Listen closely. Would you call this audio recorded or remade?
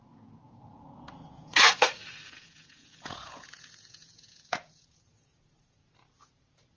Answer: remade